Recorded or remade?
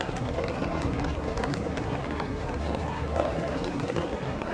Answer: remade